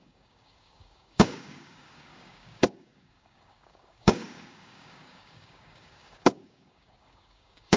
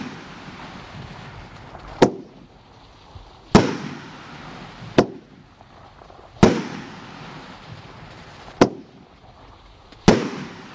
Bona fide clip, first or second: second